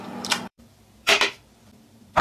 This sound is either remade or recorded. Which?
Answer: remade